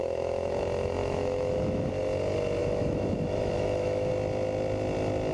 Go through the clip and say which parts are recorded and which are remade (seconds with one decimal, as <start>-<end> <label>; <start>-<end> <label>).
0.0-0.6 remade; 0.6-1.0 recorded; 1.0-1.9 remade; 1.9-2.6 recorded; 2.6-4.1 remade; 4.1-5.3 recorded